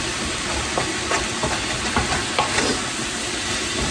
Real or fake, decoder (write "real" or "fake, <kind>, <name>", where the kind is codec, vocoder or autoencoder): real